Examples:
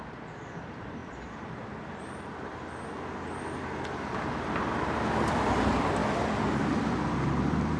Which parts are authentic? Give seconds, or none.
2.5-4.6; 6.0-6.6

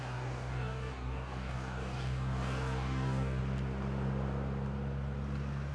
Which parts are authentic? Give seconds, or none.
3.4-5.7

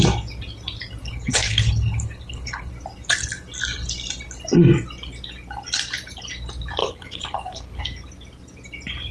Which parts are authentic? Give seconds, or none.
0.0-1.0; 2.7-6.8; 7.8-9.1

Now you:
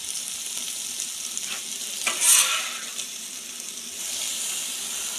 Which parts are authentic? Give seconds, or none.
0.0-5.2